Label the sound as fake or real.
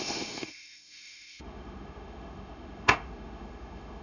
fake